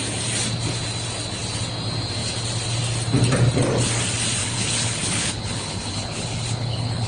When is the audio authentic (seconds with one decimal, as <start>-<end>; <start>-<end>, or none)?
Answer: 0.0-4.4